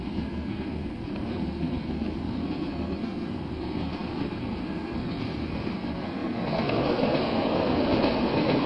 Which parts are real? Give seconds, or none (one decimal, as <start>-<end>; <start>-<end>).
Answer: none